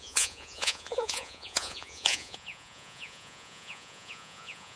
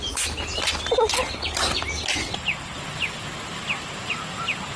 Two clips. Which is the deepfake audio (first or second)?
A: first